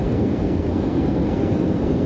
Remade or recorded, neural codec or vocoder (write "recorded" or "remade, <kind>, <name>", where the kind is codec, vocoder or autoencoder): remade, codec, SNAC